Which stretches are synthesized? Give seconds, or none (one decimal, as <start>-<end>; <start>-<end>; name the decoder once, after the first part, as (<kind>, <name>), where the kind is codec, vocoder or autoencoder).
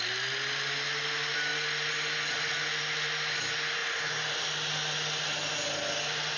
none